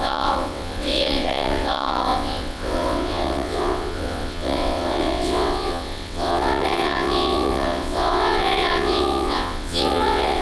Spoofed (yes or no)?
yes